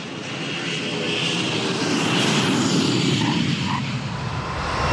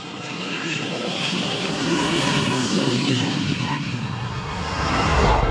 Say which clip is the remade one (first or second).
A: second